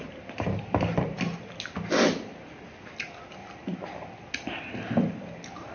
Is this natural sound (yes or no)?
yes